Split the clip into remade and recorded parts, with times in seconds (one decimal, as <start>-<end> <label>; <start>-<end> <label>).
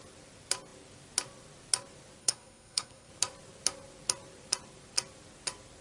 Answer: 0.0-2.2 recorded; 2.2-3.1 remade; 3.1-5.8 recorded